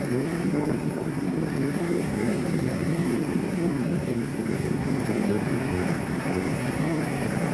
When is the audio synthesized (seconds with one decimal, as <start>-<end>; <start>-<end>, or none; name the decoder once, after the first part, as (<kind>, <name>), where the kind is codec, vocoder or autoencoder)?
0.0-7.5 (codec, SNAC)